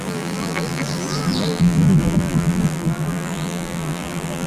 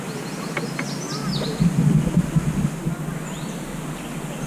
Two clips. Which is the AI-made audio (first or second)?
first